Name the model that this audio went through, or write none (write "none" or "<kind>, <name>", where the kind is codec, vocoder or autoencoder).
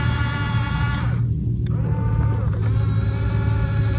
none